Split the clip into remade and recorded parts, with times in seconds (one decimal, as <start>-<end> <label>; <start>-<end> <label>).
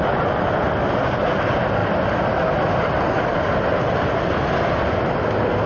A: 0.0-5.7 recorded